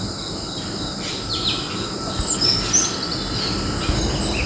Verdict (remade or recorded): recorded